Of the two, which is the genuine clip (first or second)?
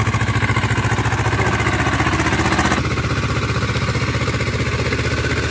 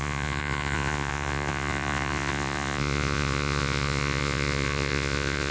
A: first